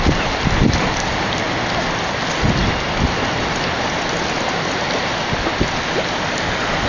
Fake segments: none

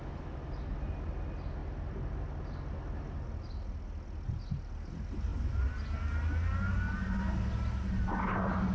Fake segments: none